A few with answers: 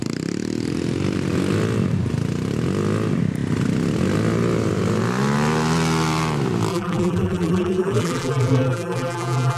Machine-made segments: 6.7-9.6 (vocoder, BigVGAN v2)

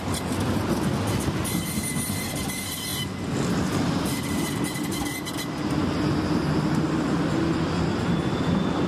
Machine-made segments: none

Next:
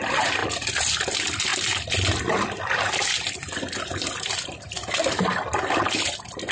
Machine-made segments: none

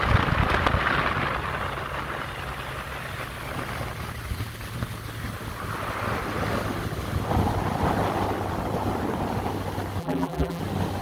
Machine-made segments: 10.0-10.6 (vocoder, BigVGAN v2)